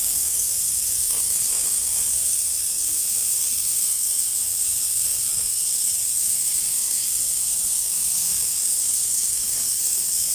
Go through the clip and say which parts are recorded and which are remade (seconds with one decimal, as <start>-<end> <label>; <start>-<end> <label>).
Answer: 0.0-10.3 remade